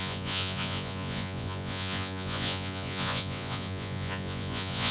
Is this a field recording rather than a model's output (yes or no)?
no